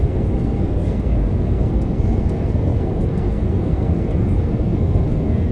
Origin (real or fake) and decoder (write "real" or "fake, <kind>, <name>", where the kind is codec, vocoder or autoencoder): fake, codec, SNAC